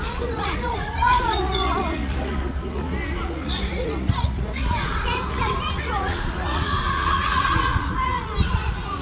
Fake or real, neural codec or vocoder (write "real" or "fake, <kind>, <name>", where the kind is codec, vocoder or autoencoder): fake, vocoder, Vocos